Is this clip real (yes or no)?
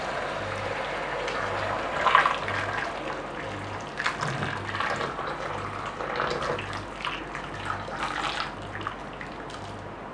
yes